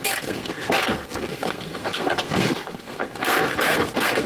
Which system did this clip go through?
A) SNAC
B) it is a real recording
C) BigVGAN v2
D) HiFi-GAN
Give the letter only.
A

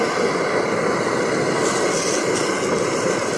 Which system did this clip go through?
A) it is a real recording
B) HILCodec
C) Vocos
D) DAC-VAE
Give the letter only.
A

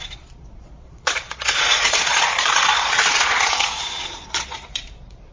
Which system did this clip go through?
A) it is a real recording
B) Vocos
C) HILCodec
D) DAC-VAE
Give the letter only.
B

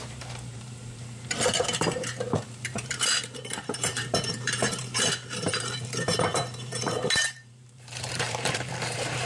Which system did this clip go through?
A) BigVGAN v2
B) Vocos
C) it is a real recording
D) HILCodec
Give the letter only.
A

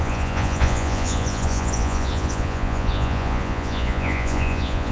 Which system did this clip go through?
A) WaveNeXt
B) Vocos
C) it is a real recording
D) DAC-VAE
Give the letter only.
B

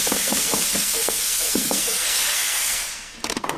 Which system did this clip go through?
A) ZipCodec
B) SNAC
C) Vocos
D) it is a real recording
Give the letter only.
B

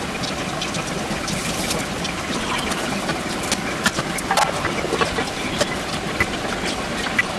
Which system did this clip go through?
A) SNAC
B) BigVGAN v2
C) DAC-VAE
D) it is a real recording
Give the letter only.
D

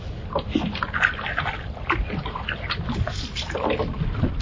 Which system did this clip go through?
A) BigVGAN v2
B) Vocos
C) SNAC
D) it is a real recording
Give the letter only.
D